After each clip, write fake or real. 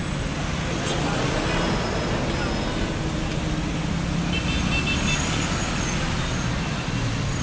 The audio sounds real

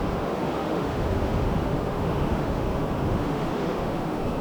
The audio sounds fake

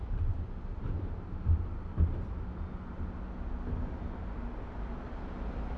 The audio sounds real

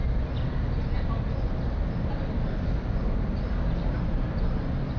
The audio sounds real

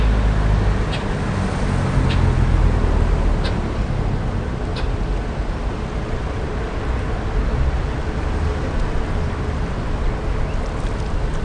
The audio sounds real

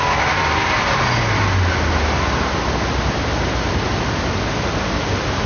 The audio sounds real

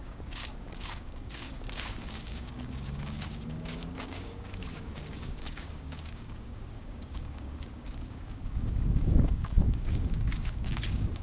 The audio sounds fake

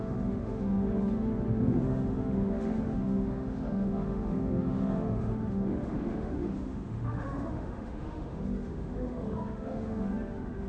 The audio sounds fake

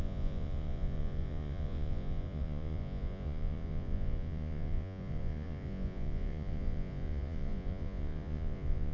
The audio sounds fake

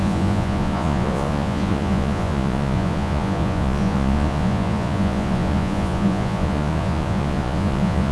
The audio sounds fake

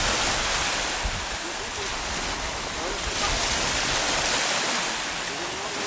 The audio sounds real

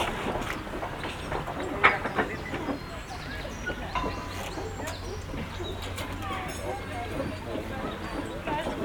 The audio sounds real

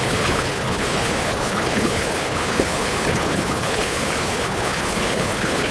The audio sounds fake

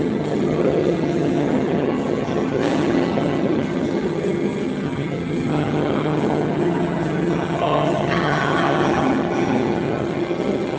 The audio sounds fake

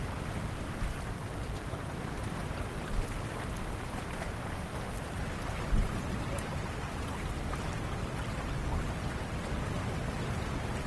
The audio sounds real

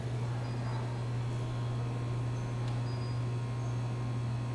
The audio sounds real